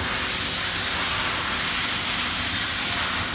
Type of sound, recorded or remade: recorded